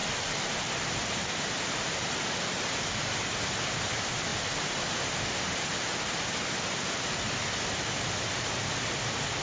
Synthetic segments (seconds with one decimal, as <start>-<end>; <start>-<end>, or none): none